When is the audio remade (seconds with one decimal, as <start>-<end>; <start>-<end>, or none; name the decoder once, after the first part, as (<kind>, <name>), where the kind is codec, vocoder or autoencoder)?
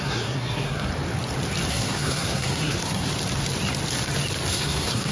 0.0-0.9 (codec, SNAC); 1.7-3.1; 4.5-5.1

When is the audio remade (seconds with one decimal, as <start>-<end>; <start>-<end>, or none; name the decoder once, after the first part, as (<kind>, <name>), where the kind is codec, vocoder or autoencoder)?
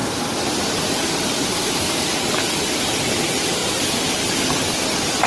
none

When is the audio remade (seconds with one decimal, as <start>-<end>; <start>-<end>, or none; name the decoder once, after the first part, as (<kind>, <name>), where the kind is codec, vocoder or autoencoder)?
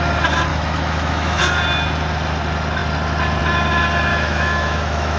0.5-1.4 (autoencoder, DAC-VAE); 4.1-5.2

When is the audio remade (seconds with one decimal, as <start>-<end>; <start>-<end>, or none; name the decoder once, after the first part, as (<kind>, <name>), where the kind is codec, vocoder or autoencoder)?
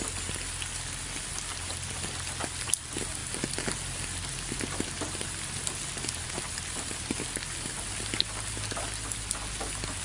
none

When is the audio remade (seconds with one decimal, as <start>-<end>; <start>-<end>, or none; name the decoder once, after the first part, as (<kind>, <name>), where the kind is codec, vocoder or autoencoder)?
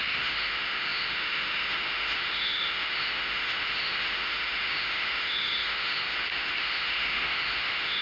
0.0-8.0 (autoencoder, DAC-VAE)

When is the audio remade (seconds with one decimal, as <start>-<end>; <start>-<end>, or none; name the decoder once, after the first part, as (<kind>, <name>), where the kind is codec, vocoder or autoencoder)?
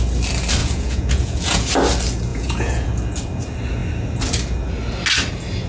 0.6-1.7 (vocoder, Vocos); 2.3-2.9